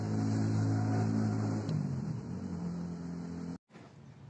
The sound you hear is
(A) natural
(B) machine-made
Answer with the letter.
A